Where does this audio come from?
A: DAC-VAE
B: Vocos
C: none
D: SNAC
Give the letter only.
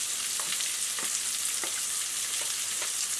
C